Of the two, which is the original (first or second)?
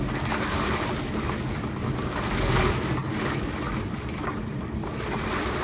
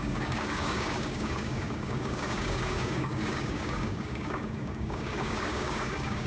first